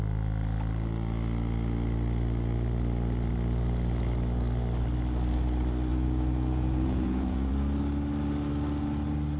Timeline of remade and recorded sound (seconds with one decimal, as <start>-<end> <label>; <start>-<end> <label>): 0.0-5.9 recorded; 5.9-7.5 remade; 7.5-9.4 recorded